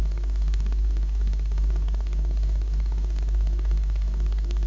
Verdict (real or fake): fake